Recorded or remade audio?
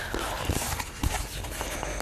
recorded